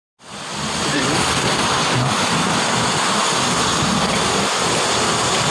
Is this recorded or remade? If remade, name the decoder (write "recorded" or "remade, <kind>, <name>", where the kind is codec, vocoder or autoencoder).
recorded